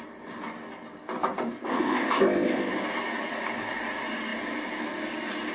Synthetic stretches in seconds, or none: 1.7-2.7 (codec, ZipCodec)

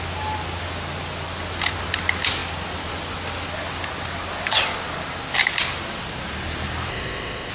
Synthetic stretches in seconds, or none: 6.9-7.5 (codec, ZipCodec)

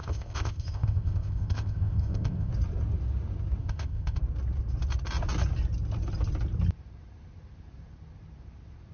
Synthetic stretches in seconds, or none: 0.0-2.5 (codec, ZipCodec); 3.6-4.2

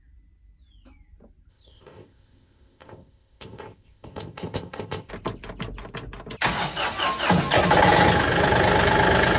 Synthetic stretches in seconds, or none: 1.5-5.1 (codec, ZipCodec)